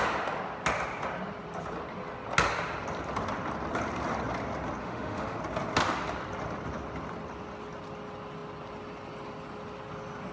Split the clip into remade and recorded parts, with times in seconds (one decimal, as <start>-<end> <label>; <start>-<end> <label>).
0.0-4.8 recorded; 4.8-5.4 remade; 5.4-10.3 recorded